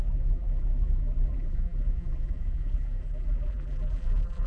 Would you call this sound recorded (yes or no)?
no